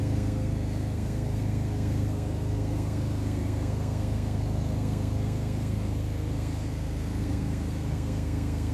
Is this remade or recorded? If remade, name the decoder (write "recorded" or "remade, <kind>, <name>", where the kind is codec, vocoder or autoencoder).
remade, codec, SNAC